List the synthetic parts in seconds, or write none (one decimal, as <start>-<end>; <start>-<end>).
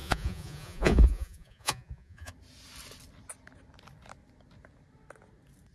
0.0-2.3